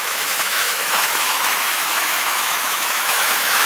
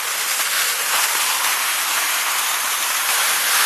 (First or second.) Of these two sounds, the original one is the second